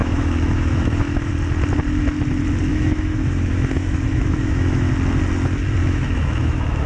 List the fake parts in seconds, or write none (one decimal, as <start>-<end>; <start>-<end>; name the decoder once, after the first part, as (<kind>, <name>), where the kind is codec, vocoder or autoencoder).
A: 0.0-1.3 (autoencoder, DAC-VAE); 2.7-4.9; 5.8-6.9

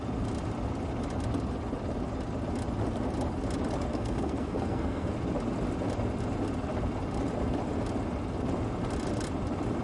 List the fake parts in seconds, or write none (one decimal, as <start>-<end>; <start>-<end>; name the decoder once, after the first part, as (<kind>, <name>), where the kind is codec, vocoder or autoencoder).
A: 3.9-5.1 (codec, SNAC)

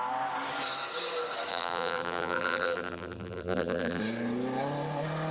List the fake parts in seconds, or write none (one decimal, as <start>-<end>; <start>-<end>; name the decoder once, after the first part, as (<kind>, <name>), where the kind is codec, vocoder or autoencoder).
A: 1.5-4.0 (vocoder, BigVGAN v2)

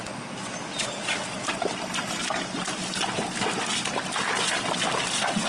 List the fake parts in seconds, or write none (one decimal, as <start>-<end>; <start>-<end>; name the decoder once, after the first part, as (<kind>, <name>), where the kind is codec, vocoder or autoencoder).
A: none